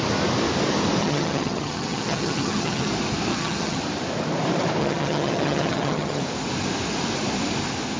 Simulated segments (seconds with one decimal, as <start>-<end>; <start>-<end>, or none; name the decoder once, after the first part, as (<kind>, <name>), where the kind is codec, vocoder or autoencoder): 1.0-2.9 (vocoder, HiFi-GAN); 3.3-3.8; 4.8-6.2